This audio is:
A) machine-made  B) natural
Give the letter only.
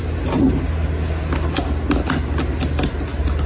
B